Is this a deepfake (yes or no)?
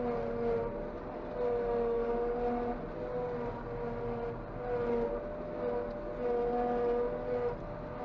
no